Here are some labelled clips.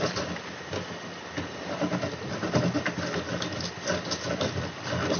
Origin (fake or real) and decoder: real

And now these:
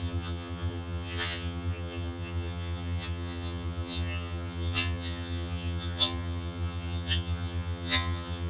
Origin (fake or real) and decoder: fake, vocoder, HiFi-GAN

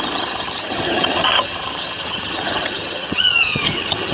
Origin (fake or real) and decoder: fake, vocoder, HiFi-GAN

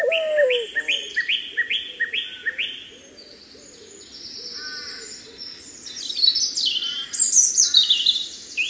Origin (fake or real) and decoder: real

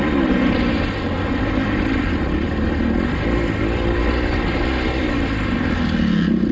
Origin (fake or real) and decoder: real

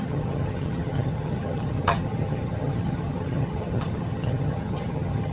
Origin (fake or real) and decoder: fake, vocoder, HiFi-GAN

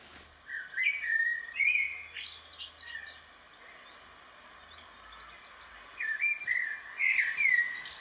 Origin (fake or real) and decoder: real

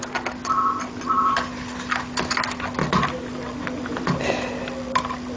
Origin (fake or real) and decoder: real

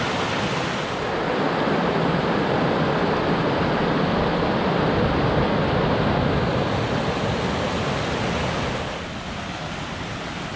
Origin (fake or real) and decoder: real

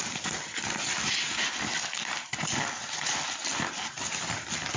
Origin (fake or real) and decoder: real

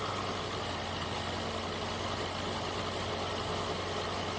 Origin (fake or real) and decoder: real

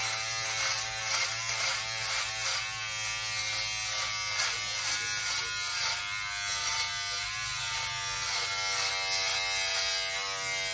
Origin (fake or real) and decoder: real